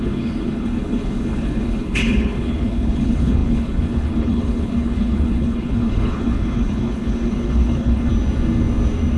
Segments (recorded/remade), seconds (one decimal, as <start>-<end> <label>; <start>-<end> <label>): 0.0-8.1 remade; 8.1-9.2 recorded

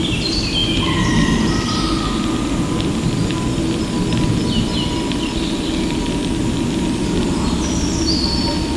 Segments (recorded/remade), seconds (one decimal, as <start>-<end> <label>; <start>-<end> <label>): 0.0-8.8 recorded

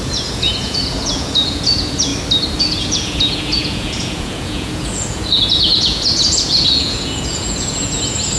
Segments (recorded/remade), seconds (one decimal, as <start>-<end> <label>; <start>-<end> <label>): 0.0-2.1 remade; 2.1-2.6 recorded; 2.6-8.4 remade

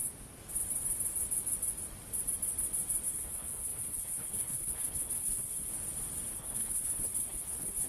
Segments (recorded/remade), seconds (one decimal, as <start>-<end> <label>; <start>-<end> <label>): 0.0-3.1 recorded; 3.1-5.7 remade; 5.7-6.3 recorded; 6.3-7.9 remade

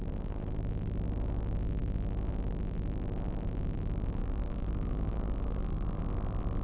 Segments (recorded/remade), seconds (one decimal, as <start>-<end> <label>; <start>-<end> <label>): 0.0-4.2 recorded; 4.2-6.0 remade; 6.0-6.6 recorded

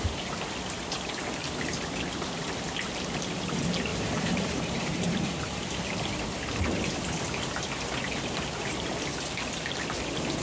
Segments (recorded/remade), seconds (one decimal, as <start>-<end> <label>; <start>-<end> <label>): 0.0-3.9 recorded; 3.9-5.9 remade; 5.9-10.4 recorded

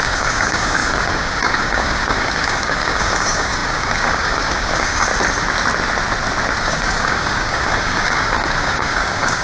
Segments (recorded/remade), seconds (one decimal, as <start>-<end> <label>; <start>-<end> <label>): 0.0-5.1 remade; 5.1-6.6 recorded; 6.6-9.4 remade

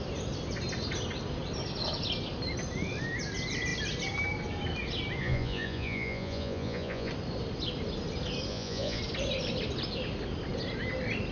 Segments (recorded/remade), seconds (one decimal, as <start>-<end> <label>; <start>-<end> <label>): 0.0-5.2 recorded; 5.2-7.1 remade; 7.1-8.5 recorded; 8.5-9.0 remade; 9.0-11.3 recorded